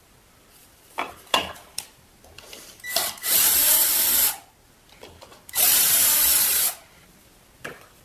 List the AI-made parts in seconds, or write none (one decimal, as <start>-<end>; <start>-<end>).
0.0-8.0